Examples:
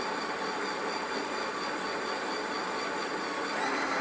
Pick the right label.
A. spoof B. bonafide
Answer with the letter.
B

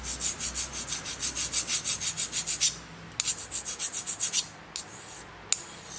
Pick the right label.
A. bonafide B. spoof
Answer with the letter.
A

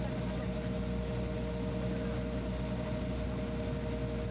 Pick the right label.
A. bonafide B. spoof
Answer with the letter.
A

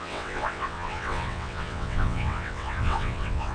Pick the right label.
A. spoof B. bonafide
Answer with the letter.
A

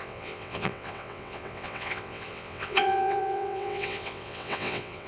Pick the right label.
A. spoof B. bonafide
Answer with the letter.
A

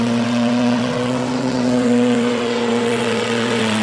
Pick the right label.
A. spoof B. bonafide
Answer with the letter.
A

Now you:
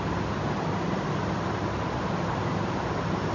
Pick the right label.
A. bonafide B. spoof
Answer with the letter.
A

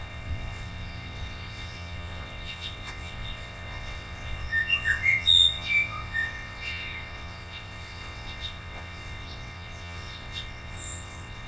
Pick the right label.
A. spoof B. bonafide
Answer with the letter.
A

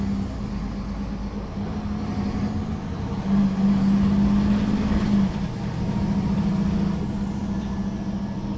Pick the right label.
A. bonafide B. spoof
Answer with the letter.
A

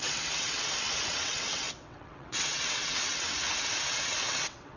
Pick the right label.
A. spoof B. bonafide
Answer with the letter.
A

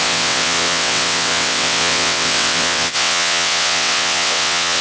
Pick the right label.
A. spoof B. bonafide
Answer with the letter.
A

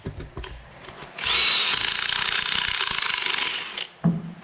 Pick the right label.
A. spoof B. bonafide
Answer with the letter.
B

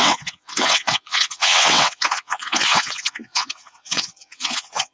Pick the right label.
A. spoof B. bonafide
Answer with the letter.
A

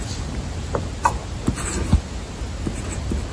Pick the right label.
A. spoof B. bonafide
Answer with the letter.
B